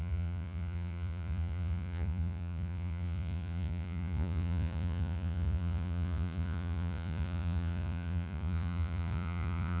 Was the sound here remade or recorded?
remade